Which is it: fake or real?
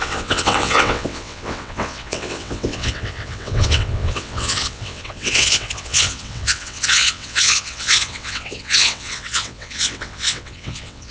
fake